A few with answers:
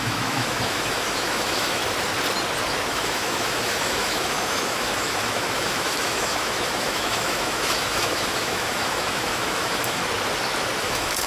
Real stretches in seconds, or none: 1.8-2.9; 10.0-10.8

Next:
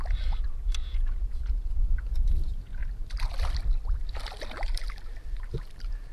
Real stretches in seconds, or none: 0.0-0.8; 1.7-6.1

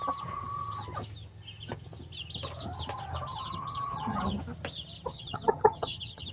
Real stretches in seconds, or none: 0.0-3.3; 4.4-5.1

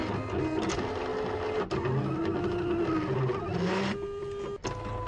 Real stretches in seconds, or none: 0.0-5.1

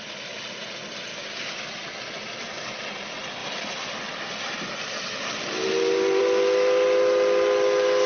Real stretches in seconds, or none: 0.0-1.1; 1.7-8.1

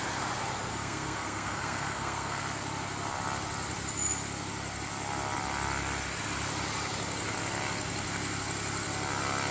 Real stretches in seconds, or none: 0.0-0.7; 2.4-9.5

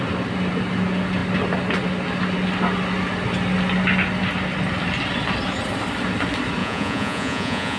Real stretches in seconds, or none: 0.0-6.6